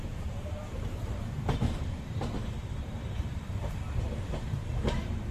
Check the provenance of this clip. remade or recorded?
remade